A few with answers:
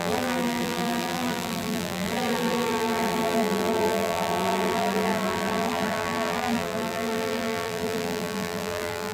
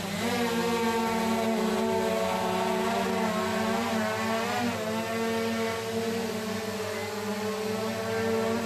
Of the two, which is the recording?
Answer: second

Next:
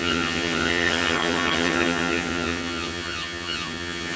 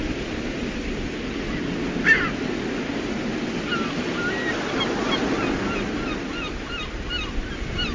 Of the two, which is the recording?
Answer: second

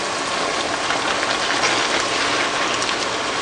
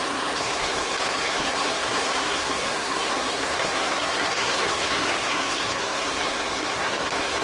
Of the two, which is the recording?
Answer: first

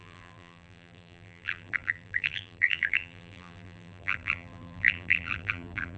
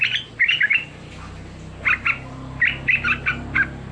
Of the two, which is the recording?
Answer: second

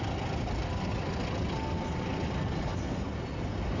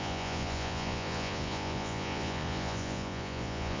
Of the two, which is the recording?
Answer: first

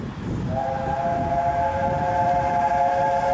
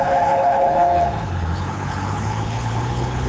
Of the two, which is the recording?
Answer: first